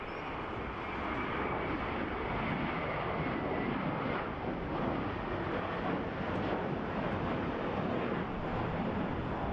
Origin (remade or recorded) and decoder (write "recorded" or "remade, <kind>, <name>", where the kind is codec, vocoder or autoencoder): recorded